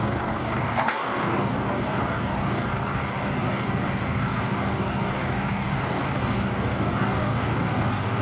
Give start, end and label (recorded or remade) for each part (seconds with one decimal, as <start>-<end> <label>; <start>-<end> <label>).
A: 0.0-8.2 remade